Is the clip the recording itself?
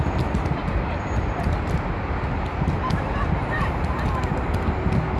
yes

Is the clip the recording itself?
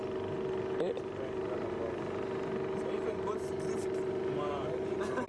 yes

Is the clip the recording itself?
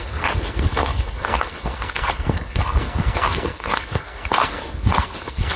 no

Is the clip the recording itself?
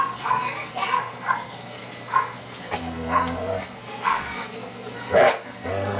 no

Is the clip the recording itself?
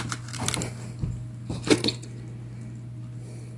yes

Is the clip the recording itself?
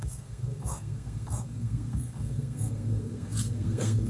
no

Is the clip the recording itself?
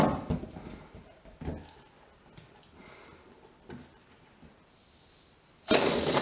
yes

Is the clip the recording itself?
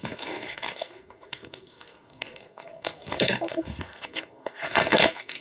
no